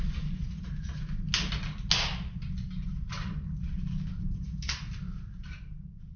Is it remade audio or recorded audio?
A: recorded